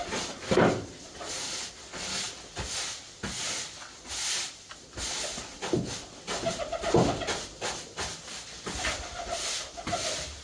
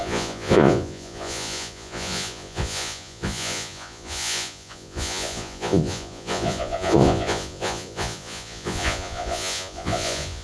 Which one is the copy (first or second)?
second